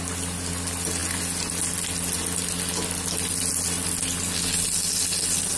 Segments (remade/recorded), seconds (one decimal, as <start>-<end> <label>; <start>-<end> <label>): 0.0-5.6 recorded

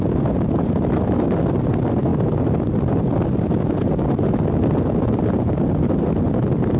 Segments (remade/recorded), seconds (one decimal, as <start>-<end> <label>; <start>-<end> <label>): 0.0-6.8 recorded

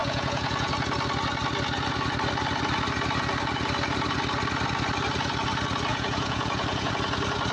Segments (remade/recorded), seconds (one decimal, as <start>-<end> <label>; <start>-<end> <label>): 0.0-0.7 remade; 0.7-5.9 recorded; 5.9-6.9 remade; 6.9-7.5 recorded

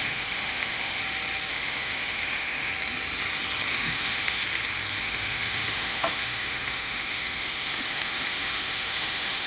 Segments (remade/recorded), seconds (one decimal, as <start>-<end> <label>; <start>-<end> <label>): 0.0-1.0 remade; 1.0-1.5 recorded; 1.5-2.7 remade; 2.7-3.7 recorded; 3.7-4.4 remade; 4.4-5.0 recorded; 5.0-9.5 remade

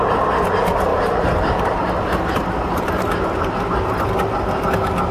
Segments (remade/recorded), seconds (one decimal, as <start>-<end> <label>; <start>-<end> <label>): 0.0-0.9 recorded; 0.9-4.0 remade; 4.0-5.1 recorded

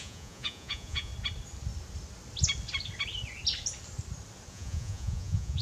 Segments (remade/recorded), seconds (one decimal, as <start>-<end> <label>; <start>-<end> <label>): 0.0-1.1 remade; 1.1-4.5 recorded; 4.5-5.6 remade

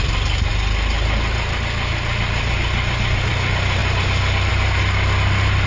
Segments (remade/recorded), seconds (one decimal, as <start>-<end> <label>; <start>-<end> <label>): 0.0-5.7 recorded

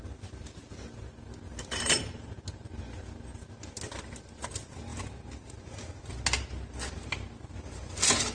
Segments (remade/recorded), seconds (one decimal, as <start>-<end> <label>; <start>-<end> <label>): 0.0-8.3 recorded